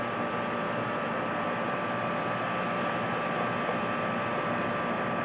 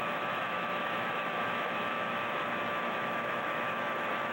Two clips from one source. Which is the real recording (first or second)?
first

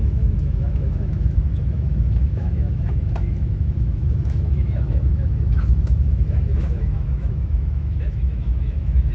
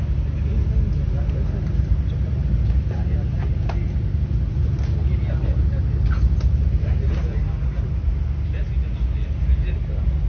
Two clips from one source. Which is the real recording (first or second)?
second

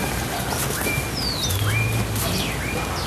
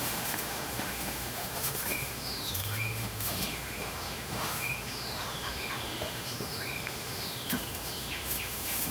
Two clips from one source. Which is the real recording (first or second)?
first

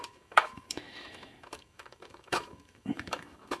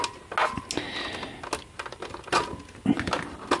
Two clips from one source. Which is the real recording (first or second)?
second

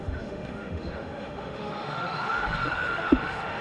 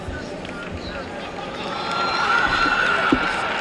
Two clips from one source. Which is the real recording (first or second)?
second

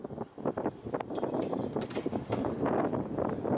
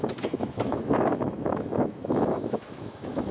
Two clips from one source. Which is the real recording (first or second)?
first